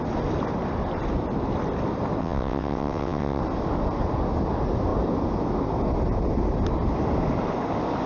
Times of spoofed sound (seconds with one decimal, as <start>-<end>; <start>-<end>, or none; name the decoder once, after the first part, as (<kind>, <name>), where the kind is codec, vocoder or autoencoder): 2.2-3.4 (vocoder, WaveNeXt)